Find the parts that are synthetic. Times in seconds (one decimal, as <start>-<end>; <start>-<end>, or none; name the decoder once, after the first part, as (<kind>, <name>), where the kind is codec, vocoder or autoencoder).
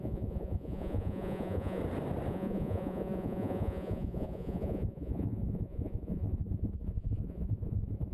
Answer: 0.0-1.8 (vocoder, Vocos); 2.3-8.1